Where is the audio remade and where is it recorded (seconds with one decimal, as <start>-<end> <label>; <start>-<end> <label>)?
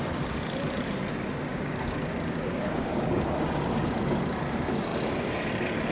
0.0-1.5 recorded; 1.5-3.8 remade; 3.8-5.9 recorded